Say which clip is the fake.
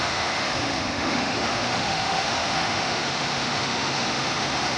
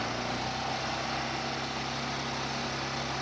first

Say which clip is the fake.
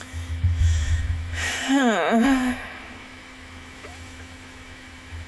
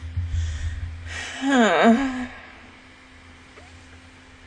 first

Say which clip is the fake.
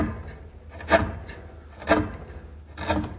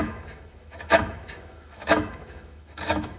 second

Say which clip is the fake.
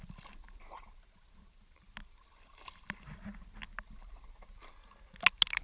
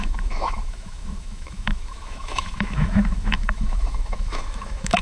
second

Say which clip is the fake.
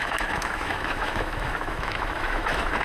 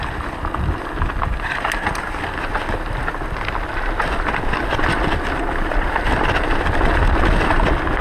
first